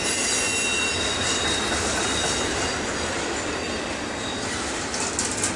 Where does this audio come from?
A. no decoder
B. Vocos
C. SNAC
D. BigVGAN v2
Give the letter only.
A